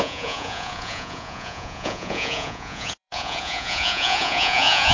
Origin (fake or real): fake